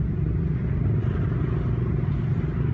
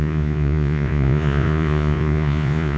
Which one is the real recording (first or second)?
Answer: first